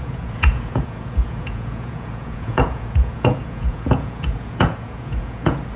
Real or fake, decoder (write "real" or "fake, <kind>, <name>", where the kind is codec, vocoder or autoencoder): fake, vocoder, Vocos